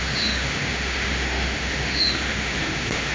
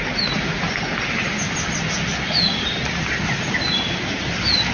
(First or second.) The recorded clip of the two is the second